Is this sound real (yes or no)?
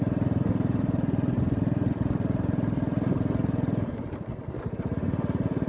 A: yes